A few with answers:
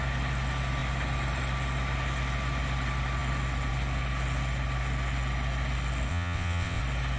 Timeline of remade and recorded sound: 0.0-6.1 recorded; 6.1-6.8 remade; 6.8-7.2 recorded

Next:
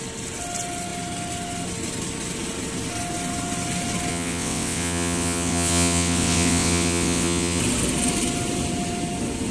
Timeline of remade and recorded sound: 0.0-4.1 recorded; 4.1-7.6 remade; 7.6-9.5 recorded